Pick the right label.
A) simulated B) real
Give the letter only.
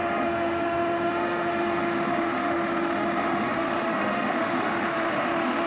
A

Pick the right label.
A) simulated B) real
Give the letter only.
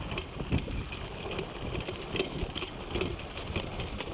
B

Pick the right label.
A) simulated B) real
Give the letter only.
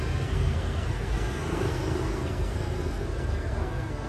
A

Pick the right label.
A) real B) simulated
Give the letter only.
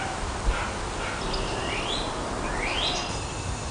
A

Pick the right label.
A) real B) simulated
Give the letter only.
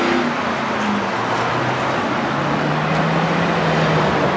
A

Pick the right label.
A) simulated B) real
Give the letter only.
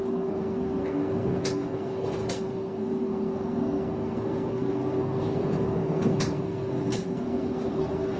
A